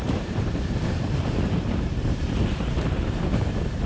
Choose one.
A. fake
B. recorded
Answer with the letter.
A